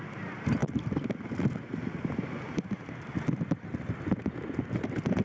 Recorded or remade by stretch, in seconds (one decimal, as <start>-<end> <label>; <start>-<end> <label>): 0.0-5.2 recorded

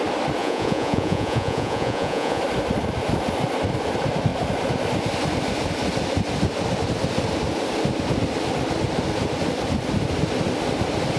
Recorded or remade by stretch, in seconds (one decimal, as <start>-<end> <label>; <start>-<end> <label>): 0.0-0.4 recorded; 0.4-2.4 remade; 2.4-11.2 recorded

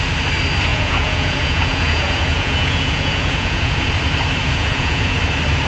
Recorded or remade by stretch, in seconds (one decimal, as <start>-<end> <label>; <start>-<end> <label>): 0.0-0.7 recorded; 0.7-3.9 remade; 3.9-4.4 recorded; 4.4-5.2 remade; 5.2-5.7 recorded

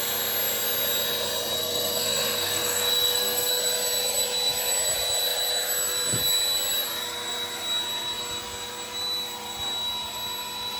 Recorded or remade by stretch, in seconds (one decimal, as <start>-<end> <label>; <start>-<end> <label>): 0.0-1.6 recorded; 1.6-3.5 remade; 3.5-10.8 recorded

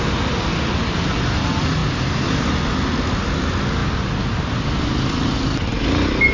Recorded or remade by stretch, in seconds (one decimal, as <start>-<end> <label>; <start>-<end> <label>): 0.0-6.3 recorded